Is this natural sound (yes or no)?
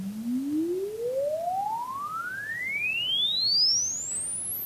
yes